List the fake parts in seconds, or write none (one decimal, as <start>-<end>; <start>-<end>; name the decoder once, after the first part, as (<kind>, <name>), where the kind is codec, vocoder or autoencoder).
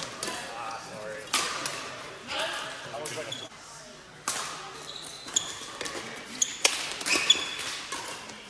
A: none